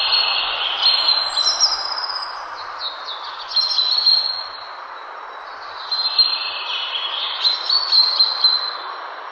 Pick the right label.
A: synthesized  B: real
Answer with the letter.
B